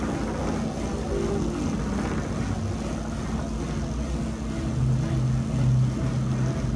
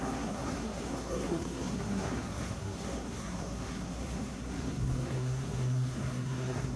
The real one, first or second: first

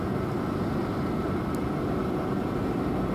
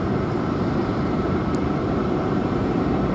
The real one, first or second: first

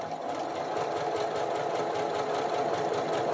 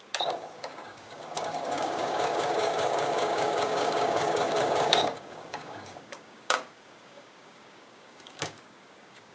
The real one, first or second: first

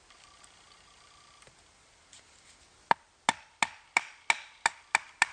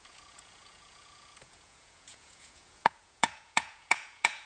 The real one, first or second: first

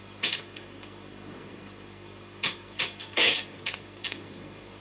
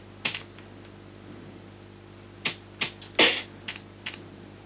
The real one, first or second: second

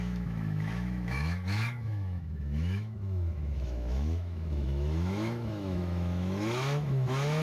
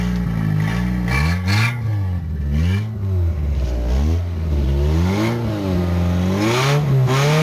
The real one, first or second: second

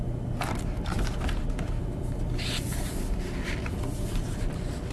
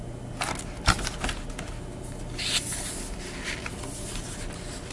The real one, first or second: second